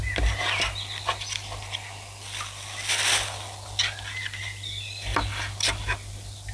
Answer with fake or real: real